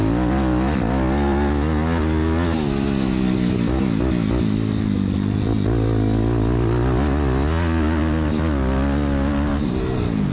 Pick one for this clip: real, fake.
real